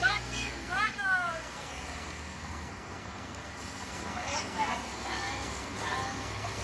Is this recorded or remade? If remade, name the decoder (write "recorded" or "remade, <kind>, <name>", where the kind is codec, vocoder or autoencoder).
remade, codec, SNAC